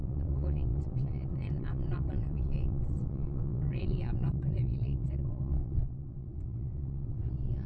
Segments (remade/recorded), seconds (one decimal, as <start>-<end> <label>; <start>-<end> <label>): 0.0-7.7 remade